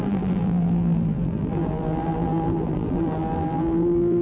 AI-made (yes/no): yes